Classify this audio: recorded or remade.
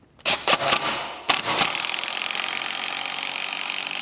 recorded